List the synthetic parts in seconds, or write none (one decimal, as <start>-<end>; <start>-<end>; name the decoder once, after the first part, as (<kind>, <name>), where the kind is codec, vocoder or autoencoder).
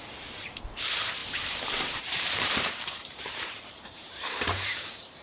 0.0-5.2 (vocoder, BigVGAN v2)